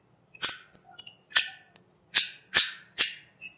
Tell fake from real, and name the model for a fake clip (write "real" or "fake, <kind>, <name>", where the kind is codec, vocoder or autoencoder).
real